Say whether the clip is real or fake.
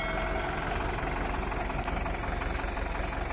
real